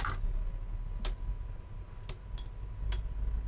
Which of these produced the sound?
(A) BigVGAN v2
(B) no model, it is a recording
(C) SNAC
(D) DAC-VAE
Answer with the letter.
B